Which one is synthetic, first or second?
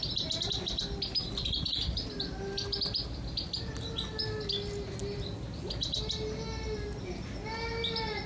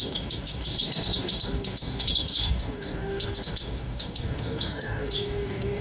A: second